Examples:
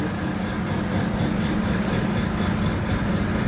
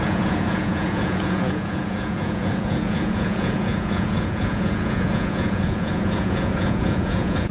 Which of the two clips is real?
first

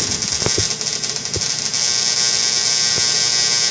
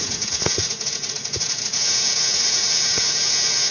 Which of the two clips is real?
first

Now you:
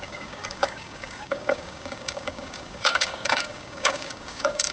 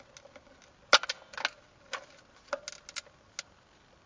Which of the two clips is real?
second